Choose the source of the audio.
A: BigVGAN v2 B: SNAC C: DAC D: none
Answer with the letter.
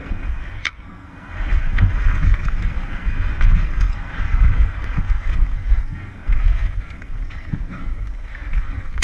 B